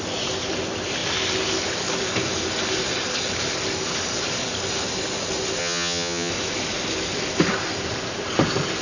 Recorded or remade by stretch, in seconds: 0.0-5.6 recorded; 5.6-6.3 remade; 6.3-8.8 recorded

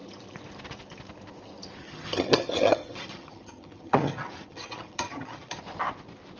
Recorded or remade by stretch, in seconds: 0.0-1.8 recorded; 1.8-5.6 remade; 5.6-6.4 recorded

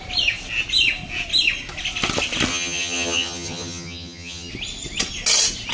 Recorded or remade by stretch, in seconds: 0.0-2.5 recorded; 2.5-4.5 remade; 4.5-5.7 recorded

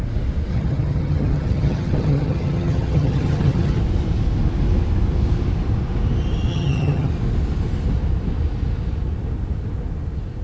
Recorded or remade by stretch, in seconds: 0.0-0.5 recorded; 0.5-3.8 remade; 3.8-6.5 recorded; 6.5-7.1 remade; 7.1-10.4 recorded

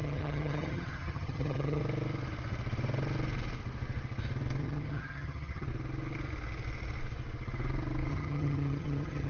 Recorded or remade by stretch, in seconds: 0.0-1.8 remade; 1.8-4.6 recorded; 4.6-5.7 remade; 5.7-8.1 recorded; 8.1-9.3 remade

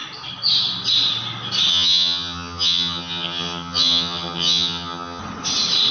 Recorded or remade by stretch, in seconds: 0.0-1.7 recorded; 1.7-5.2 remade; 5.2-5.9 recorded

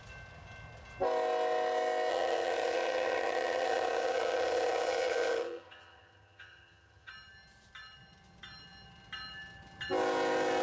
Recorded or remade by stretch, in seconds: 0.0-2.1 recorded; 2.1-7.1 remade; 7.1-10.6 recorded

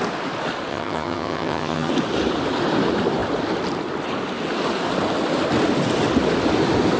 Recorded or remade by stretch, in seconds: 0.0-0.7 recorded; 0.7-1.9 remade; 1.9-7.0 recorded